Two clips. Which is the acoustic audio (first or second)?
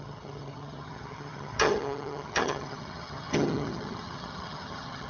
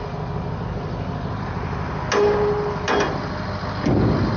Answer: second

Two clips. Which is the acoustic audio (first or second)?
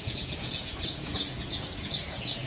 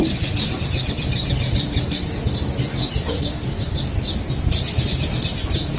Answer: second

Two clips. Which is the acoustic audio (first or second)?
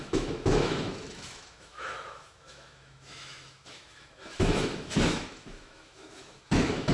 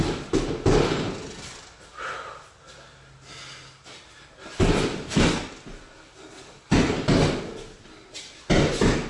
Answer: second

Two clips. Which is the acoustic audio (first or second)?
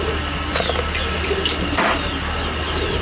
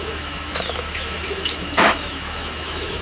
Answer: first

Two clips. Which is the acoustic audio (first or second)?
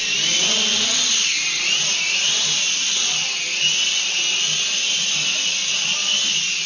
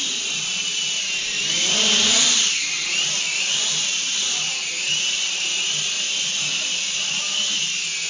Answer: first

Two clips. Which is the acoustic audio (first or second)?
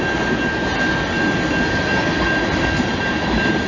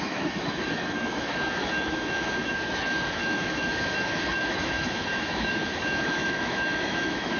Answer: first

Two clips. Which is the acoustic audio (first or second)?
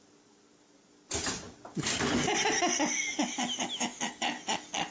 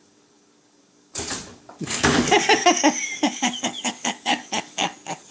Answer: first